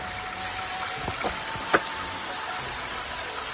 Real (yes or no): yes